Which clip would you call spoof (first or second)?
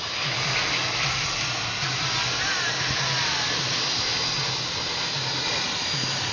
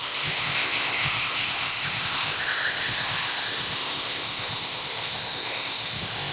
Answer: second